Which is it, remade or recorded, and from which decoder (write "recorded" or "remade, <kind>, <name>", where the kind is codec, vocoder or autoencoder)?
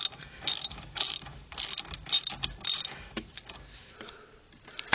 recorded